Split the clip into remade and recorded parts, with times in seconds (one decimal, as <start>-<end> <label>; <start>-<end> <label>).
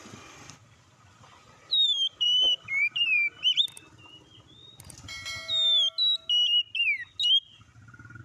0.0-0.6 recorded; 0.6-3.7 remade; 3.7-8.2 recorded